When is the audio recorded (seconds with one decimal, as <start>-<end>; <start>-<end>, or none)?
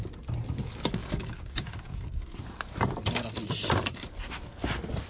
0.0-1.0; 2.3-5.1